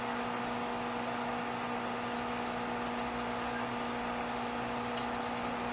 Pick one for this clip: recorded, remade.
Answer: recorded